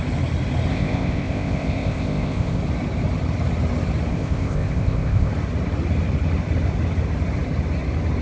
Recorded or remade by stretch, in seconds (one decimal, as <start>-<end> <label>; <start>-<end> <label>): 0.0-0.7 recorded; 0.7-2.6 remade; 2.6-4.1 recorded; 4.1-5.3 remade; 5.3-8.2 recorded